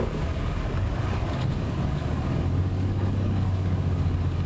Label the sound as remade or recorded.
remade